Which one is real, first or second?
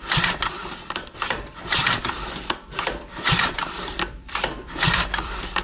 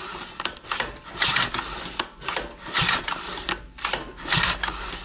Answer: second